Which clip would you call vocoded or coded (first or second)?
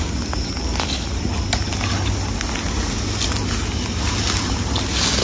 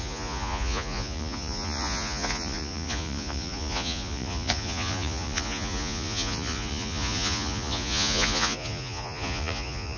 second